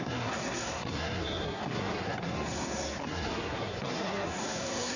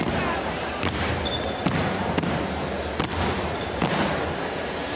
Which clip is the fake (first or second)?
first